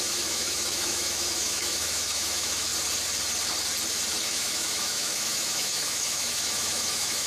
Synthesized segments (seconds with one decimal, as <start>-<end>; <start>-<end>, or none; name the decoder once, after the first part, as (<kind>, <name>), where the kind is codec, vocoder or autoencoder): 0.0-2.7 (autoencoder, DAC-VAE); 4.1-7.3